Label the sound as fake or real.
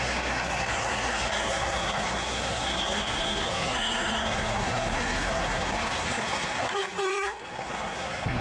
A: fake